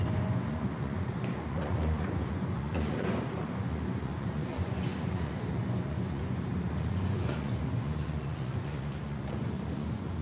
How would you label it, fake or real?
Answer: fake